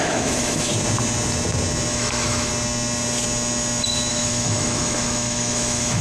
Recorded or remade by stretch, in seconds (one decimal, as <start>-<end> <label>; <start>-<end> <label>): 0.0-0.7 remade; 0.7-1.9 recorded; 1.9-2.5 remade; 2.5-4.1 recorded; 4.1-6.0 remade